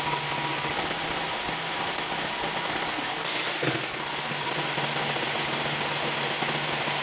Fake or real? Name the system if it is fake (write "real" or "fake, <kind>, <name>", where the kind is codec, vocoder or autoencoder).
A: real